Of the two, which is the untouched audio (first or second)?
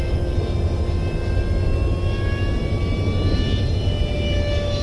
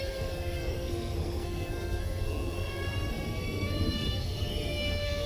first